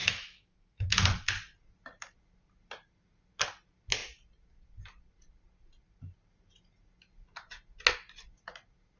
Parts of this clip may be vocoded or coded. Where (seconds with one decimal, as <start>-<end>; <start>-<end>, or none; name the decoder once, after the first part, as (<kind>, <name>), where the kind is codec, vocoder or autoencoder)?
0.0-0.9 (autoencoder, DAC-VAE)